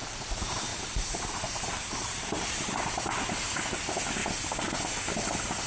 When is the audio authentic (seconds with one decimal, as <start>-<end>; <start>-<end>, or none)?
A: 0.0-0.7; 1.7-5.7